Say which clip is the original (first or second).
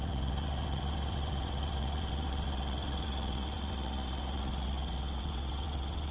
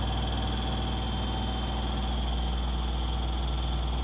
second